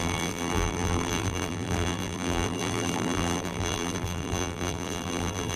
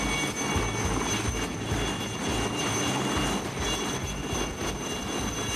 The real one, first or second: second